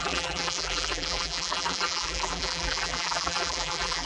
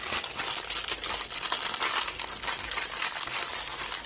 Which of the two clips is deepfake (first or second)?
first